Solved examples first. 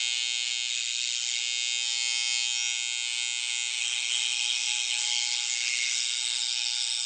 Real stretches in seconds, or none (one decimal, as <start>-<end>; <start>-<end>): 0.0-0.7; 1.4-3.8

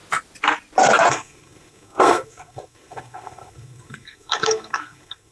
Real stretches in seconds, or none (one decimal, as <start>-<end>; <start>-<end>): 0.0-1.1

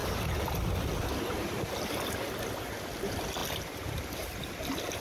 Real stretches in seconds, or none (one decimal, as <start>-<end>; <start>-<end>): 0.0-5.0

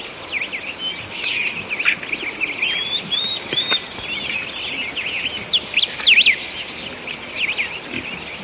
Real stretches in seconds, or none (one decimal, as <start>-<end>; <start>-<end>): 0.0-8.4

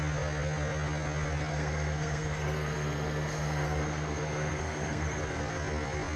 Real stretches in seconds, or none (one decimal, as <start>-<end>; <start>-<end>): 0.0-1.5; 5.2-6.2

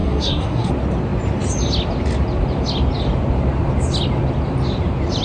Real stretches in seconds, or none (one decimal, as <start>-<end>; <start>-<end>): 0.7-5.2

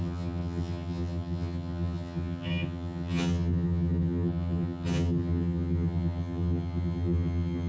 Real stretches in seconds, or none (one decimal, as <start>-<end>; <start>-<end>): none